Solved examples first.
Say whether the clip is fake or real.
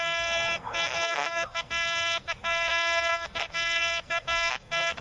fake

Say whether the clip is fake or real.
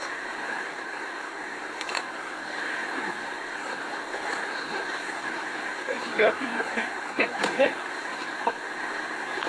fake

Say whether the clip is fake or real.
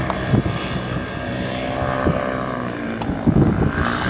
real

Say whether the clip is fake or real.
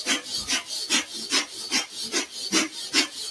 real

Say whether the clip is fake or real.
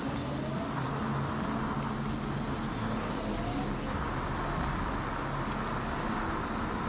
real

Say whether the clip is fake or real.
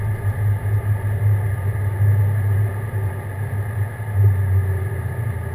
real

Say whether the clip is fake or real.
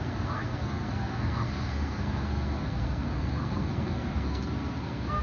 fake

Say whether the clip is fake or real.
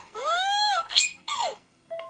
fake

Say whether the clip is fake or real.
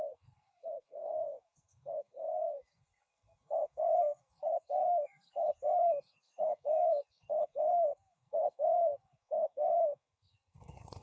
fake